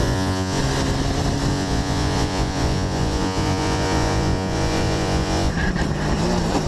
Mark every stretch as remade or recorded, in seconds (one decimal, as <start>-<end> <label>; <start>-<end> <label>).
0.0-0.6 remade; 0.6-1.5 recorded; 1.5-5.5 remade; 5.5-6.7 recorded